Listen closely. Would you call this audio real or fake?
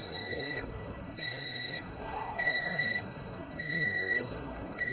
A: fake